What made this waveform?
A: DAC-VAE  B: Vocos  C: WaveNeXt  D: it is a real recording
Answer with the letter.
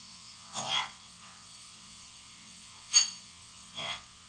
C